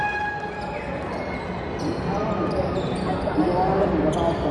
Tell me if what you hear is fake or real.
real